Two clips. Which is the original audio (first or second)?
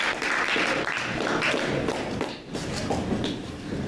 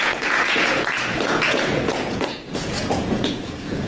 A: first